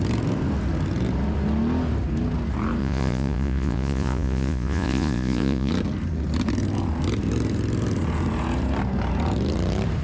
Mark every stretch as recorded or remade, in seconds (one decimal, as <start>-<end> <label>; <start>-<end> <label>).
0.0-2.8 recorded; 2.8-5.7 remade; 5.7-10.0 recorded